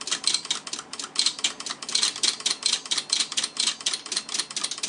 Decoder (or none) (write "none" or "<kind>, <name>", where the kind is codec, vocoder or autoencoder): none